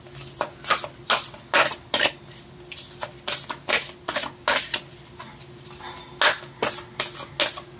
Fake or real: real